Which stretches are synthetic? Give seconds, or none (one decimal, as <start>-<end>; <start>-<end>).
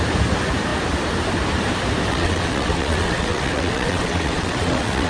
2.1-5.1